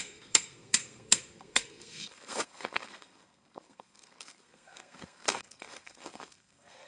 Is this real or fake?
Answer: fake